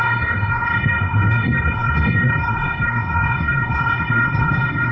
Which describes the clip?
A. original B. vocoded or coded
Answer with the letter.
B